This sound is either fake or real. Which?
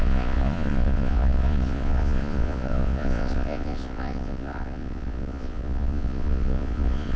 fake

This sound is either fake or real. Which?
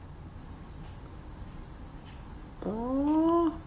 real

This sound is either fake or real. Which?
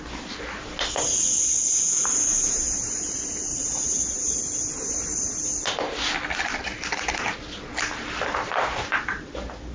real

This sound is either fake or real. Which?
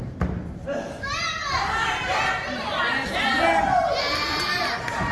fake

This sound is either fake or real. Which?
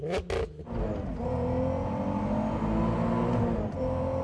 real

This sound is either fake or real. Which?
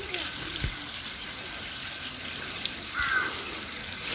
fake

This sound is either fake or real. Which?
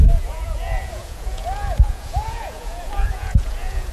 fake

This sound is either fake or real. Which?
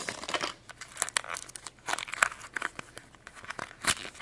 real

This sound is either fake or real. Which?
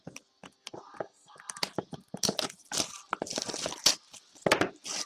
real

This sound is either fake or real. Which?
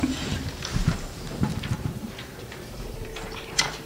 fake